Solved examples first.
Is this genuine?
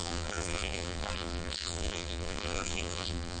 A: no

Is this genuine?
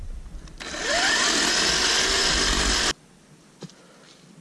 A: yes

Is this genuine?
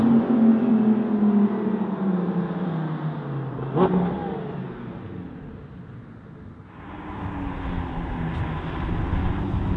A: yes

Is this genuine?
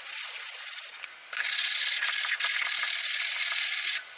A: yes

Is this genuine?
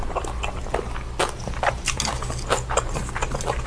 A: yes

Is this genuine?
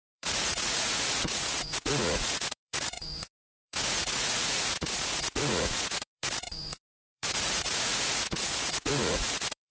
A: no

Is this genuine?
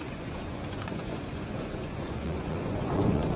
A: no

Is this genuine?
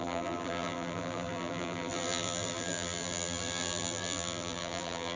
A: no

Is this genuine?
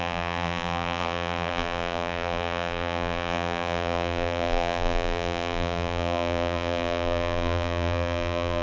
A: no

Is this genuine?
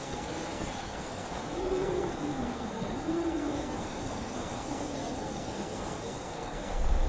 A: no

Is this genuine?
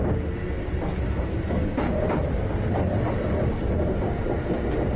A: yes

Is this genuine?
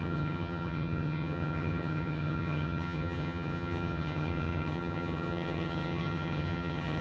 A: no